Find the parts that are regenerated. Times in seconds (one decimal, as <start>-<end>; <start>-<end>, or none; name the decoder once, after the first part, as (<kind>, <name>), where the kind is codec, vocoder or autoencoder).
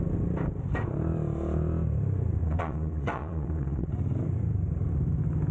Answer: 2.4-3.9 (vocoder, Vocos)